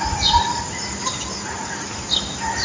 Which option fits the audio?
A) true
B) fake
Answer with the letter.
A